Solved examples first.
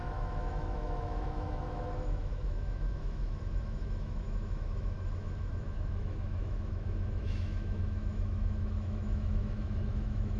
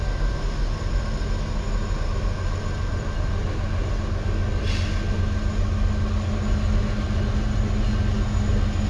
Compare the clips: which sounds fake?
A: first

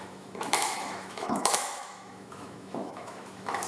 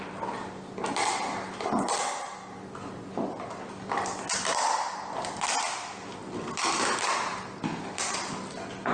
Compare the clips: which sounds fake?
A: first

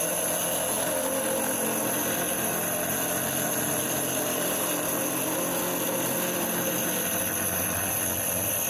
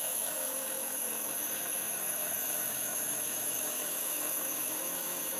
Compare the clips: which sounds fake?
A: second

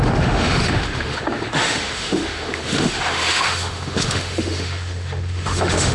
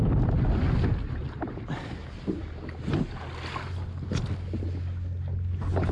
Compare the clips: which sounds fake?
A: first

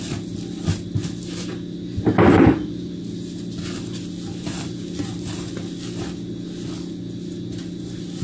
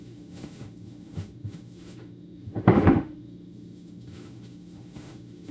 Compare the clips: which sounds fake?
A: second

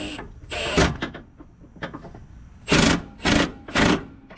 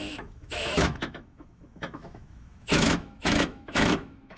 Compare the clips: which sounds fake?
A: second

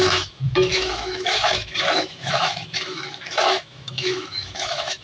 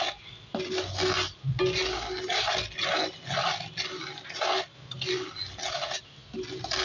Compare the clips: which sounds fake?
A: first